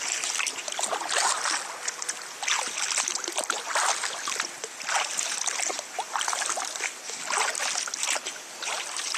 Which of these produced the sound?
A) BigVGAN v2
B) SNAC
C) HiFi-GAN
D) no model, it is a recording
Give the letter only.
D